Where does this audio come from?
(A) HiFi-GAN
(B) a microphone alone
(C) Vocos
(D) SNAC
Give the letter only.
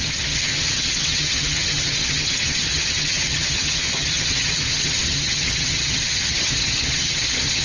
A